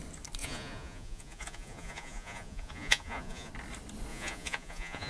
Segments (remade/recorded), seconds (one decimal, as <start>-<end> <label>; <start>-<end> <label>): 0.0-0.4 recorded; 0.4-3.5 remade; 3.5-4.1 recorded; 4.1-5.1 remade